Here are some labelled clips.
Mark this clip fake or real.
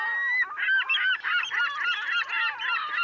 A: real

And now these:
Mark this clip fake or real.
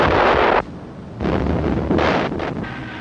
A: real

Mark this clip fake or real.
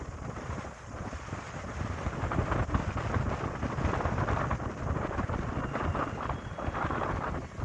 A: real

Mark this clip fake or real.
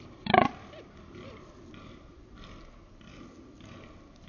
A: real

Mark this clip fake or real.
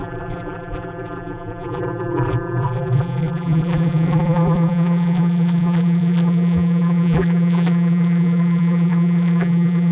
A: fake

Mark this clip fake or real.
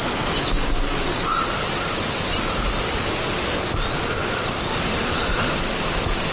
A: real